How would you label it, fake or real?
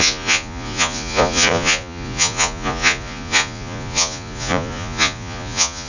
fake